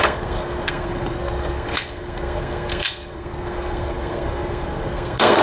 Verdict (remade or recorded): remade